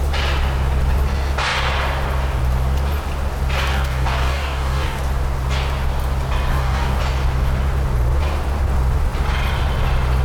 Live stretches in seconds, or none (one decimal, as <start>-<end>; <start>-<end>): 0.0-3.7; 5.0-6.5; 7.0-10.2